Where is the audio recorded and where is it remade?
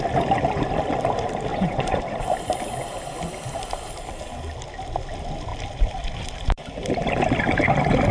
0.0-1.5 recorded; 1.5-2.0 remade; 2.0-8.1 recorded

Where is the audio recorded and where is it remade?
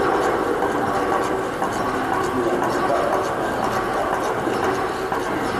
0.0-5.6 recorded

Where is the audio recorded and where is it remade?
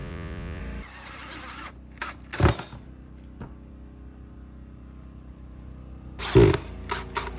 0.0-0.6 remade; 0.6-7.4 recorded